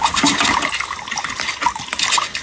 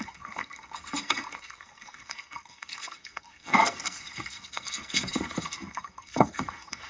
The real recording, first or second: first